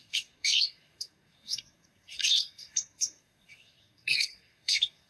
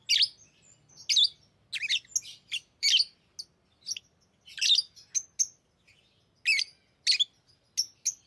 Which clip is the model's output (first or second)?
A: first